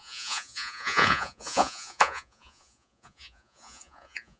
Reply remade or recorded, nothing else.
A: remade